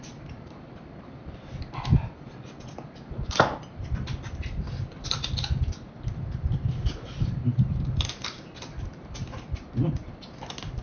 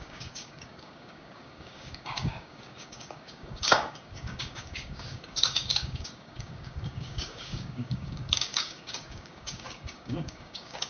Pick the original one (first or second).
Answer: first